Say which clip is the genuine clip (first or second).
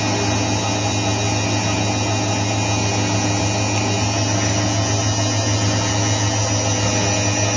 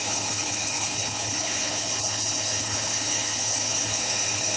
first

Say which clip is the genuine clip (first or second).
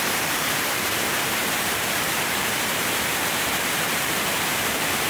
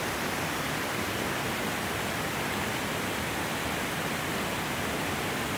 second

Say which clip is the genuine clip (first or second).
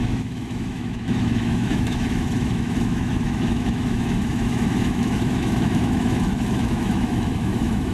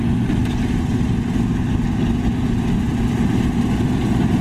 second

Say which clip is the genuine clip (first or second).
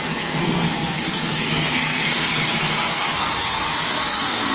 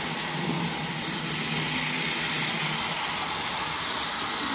second